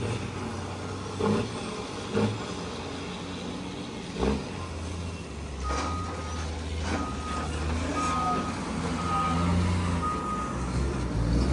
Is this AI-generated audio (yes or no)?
no